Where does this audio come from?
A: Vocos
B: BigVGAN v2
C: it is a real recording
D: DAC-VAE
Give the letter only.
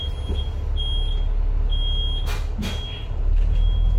C